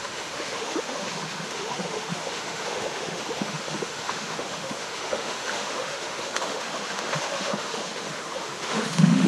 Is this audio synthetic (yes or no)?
yes